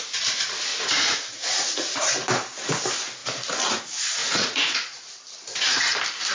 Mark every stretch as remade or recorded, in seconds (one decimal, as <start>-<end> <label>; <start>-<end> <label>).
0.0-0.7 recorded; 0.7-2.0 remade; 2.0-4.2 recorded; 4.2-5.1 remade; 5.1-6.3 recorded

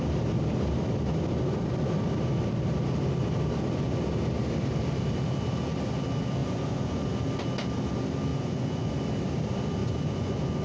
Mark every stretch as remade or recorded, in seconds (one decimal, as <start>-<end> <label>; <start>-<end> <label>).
0.0-6.4 recorded; 6.4-7.0 remade; 7.0-8.3 recorded; 8.3-8.9 remade; 8.9-9.8 recorded; 9.8-10.6 remade

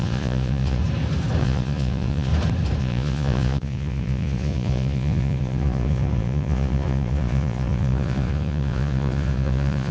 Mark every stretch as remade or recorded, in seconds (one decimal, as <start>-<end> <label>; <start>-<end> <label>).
0.0-0.8 remade; 0.8-1.4 recorded; 1.4-2.3 remade; 2.3-2.8 recorded; 2.8-9.9 remade

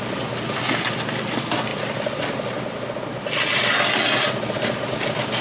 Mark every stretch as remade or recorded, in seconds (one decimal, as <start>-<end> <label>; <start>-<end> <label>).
0.0-5.4 recorded

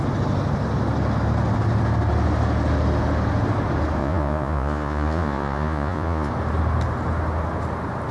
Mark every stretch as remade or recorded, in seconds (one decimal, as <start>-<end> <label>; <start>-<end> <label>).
0.0-4.0 recorded; 4.0-6.3 remade; 6.3-8.1 recorded

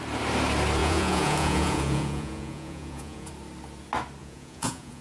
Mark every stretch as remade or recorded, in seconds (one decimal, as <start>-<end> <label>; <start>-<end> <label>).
0.0-0.8 recorded; 0.8-3.3 remade; 3.3-4.2 recorded; 4.2-5.0 remade